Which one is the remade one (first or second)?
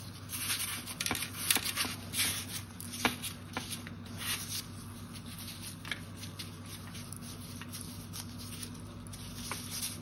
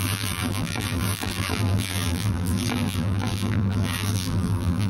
second